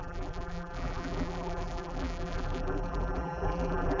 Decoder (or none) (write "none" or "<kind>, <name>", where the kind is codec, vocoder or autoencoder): vocoder, BigVGAN v2